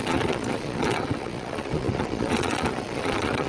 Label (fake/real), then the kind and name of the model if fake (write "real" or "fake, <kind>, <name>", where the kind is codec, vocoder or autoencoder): fake, vocoder, Vocos